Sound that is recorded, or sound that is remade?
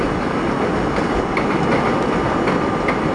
recorded